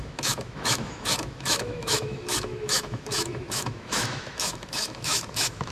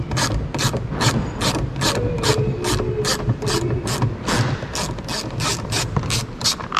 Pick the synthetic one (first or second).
first